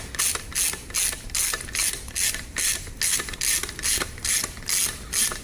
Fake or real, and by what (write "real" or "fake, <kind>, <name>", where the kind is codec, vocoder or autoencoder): real